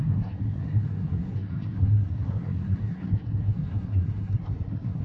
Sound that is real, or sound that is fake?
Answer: fake